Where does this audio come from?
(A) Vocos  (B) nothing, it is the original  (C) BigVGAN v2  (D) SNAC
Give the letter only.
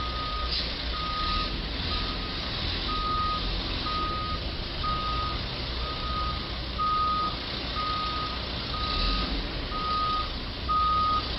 B